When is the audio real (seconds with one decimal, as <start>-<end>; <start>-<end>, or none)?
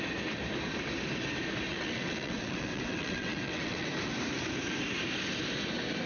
0.0-1.7; 3.9-6.1